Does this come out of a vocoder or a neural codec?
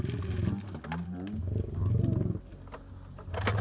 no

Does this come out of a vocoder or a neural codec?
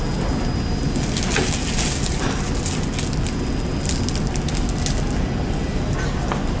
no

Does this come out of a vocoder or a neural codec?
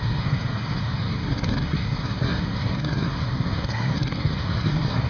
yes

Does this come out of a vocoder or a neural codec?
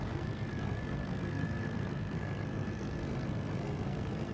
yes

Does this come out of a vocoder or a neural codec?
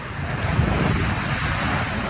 no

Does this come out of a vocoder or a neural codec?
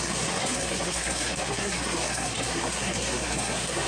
yes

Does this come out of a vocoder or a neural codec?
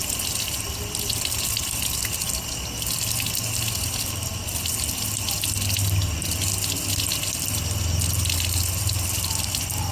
no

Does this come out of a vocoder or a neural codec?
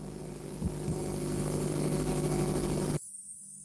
yes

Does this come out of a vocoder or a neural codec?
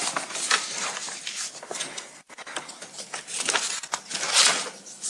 no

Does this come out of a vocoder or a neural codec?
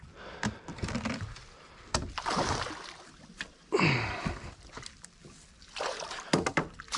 no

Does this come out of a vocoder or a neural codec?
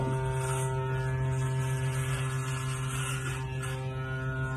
no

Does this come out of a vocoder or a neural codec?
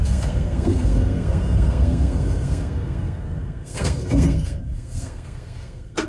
yes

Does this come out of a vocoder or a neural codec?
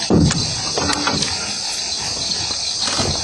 no